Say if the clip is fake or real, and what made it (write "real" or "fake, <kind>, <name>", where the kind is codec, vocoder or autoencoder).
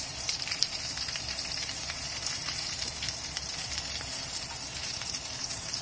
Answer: fake, vocoder, BigVGAN v2